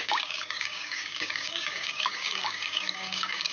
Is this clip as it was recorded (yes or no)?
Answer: no